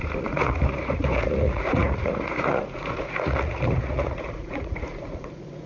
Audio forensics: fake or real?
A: fake